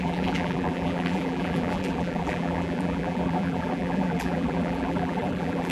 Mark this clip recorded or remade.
remade